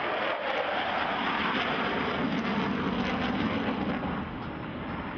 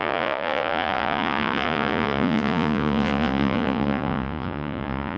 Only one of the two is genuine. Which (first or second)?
first